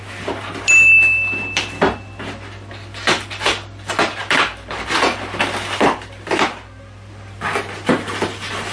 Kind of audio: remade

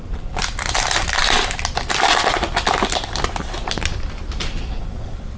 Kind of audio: recorded